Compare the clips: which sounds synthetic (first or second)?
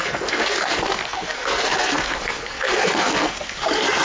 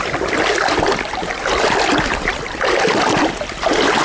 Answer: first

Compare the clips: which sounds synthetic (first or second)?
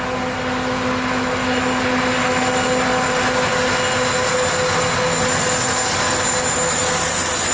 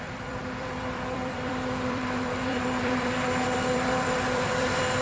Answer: second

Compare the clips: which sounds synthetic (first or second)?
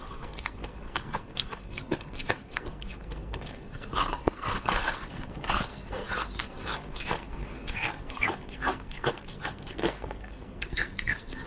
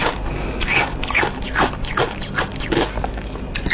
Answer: first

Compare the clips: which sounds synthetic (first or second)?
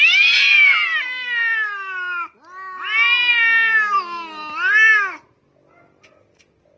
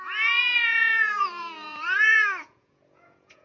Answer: second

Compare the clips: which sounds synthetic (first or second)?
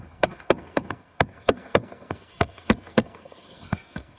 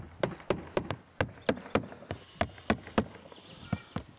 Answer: first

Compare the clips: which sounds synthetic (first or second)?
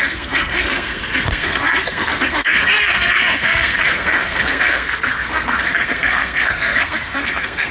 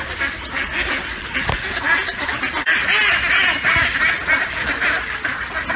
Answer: first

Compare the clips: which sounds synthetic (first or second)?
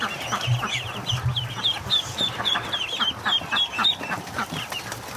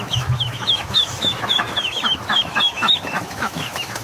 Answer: second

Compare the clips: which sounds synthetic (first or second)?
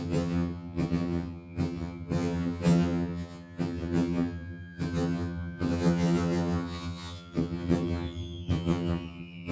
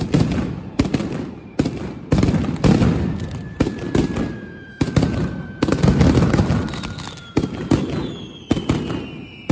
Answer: first